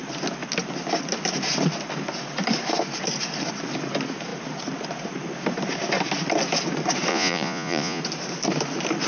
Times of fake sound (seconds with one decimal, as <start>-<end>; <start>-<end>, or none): 7.1-8.0